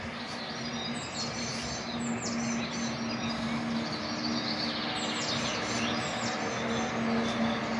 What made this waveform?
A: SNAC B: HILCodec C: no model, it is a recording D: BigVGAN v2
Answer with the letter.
C